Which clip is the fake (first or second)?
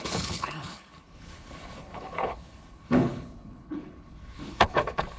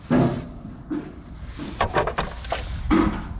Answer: first